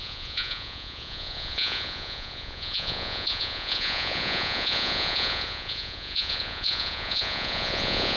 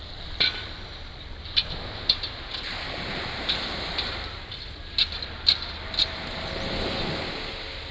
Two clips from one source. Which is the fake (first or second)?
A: first